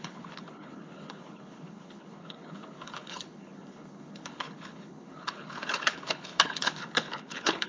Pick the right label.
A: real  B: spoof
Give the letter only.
B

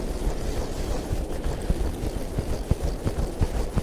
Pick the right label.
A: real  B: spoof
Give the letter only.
A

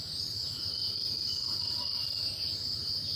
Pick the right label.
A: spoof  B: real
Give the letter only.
A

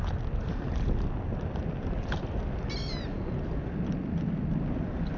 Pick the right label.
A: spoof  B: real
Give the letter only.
B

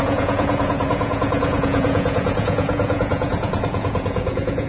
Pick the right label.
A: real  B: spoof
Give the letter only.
B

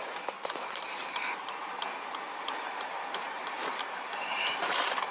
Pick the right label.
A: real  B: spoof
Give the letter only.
B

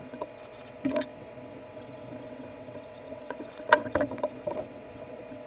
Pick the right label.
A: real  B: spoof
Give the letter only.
B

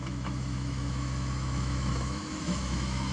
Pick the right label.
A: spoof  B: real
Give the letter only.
A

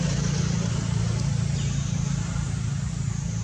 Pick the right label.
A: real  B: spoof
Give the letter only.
A